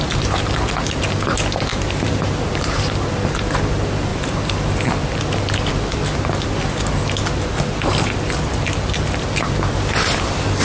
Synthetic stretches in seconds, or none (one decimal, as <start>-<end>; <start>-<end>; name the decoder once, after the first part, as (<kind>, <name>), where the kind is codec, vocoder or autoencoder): 1.7-3.1 (vocoder, BigVGAN v2)